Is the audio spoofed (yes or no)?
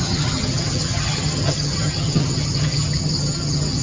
yes